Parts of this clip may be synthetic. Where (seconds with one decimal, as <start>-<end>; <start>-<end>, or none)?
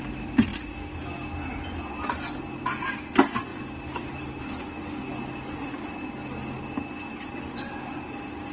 0.5-1.0; 3.5-4.4